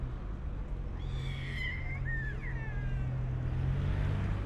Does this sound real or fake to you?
real